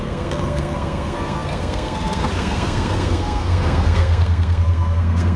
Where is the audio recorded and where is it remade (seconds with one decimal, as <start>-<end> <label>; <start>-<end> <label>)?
0.0-5.4 remade